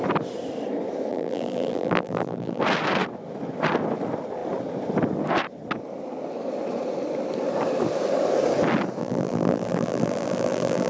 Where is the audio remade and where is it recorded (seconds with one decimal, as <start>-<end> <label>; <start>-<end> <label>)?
0.0-1.1 recorded; 1.1-2.6 remade; 2.6-9.0 recorded; 9.0-10.9 remade